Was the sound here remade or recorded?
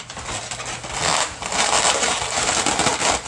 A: recorded